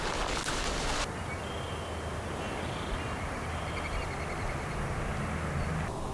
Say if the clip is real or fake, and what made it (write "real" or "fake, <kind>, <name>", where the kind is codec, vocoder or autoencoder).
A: real